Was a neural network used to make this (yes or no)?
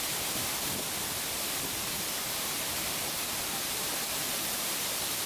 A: yes